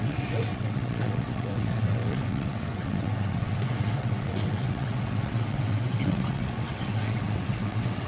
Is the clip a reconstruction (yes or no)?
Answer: yes